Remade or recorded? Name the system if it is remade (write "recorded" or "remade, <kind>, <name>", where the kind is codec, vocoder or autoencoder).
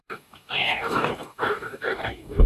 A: remade, codec, DAC